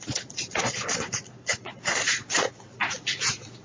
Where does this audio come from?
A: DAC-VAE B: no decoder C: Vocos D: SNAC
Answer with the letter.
C